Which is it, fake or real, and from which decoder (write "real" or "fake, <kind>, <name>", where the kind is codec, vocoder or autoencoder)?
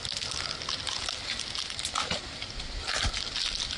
real